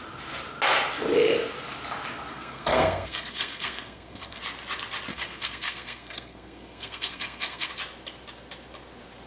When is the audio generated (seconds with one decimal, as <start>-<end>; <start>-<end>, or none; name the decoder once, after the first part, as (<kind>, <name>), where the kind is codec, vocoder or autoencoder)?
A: 2.3-4.4 (codec, SNAC); 5.1-7.7